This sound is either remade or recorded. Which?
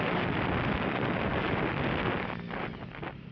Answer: recorded